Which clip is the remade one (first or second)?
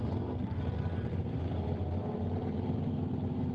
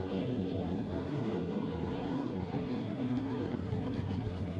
second